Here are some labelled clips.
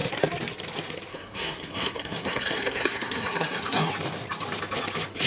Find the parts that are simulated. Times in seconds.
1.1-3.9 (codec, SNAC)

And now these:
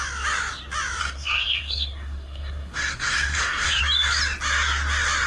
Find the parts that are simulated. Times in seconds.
1.0-3.8 (codec, SNAC)